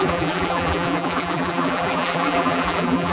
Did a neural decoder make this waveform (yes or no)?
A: yes